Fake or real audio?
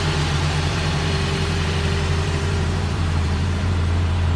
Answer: fake